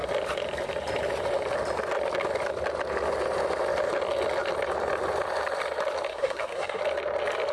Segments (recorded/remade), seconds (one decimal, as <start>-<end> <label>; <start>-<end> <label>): 0.0-6.1 recorded; 6.1-6.8 remade; 6.8-7.5 recorded